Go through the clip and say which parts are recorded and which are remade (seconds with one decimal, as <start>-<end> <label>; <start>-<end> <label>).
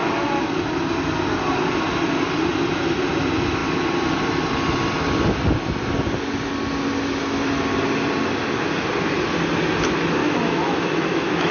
0.0-10.2 recorded; 10.2-11.5 remade